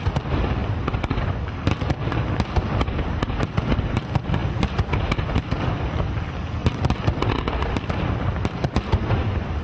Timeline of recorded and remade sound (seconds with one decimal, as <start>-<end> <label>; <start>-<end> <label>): 0.0-9.6 recorded